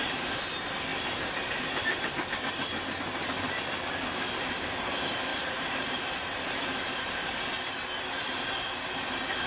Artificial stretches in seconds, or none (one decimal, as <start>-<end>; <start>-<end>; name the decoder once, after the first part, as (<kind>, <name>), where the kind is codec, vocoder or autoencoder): 5.3-7.3 (vocoder, BigVGAN v2)